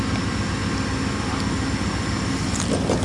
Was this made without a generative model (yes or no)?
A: yes